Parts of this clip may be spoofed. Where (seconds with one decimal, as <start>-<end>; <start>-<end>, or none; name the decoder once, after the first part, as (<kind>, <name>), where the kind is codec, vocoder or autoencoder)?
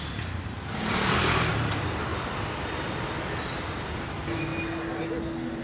0.0-2.1 (vocoder, BigVGAN v2); 3.4-4.5